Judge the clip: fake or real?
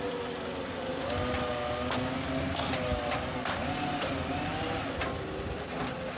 real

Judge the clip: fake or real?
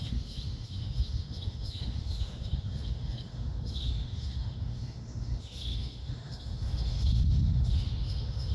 fake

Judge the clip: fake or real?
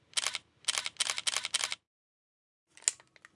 real